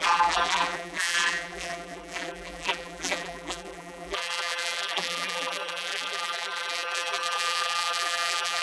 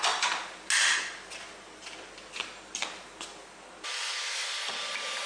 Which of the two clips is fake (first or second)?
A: first